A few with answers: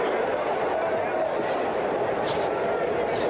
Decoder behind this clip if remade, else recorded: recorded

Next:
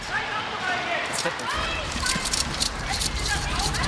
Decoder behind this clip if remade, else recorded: remade, vocoder, BigVGAN v2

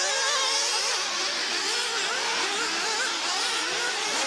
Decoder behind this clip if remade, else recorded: recorded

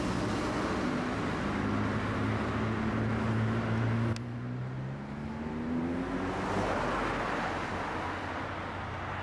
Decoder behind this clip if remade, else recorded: recorded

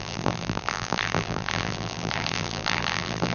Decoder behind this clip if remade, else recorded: remade, vocoder, BigVGAN v2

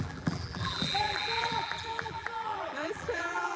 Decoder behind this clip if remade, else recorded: remade, vocoder, BigVGAN v2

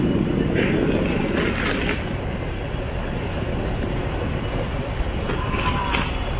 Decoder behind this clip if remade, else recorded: recorded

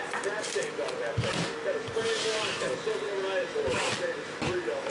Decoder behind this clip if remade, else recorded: recorded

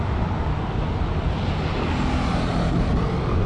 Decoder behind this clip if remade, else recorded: recorded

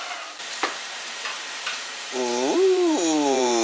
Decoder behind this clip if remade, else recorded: remade, vocoder, BigVGAN v2